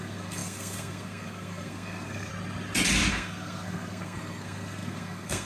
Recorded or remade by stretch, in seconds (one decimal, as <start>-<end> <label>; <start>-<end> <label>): 0.0-2.3 remade; 2.3-3.1 recorded; 3.1-5.5 remade